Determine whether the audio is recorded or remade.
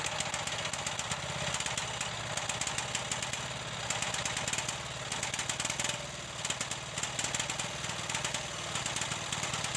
recorded